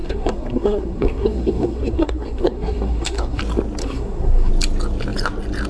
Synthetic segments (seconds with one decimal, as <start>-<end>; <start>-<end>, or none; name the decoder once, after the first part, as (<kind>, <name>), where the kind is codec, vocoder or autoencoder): 0.0-3.4 (codec, SNAC); 3.8-4.5